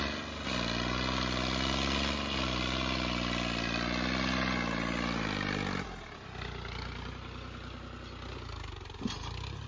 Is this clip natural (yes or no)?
yes